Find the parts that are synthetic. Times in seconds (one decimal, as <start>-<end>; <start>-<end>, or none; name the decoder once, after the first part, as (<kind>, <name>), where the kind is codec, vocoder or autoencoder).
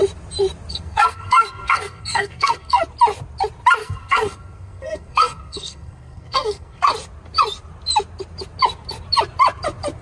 0.7-2.8 (codec, SNAC); 3.8-6.8